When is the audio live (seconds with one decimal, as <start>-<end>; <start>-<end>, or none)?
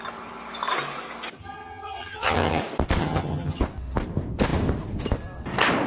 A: 0.0-1.4; 2.6-3.0; 3.6-5.9